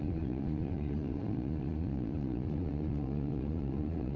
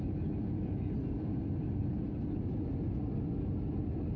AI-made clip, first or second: first